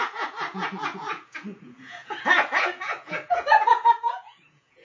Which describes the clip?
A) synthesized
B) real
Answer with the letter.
A